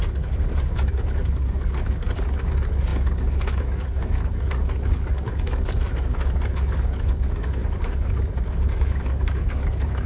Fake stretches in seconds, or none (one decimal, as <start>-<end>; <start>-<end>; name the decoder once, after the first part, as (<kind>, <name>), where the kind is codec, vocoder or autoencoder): 0.0-10.1 (codec, DAC)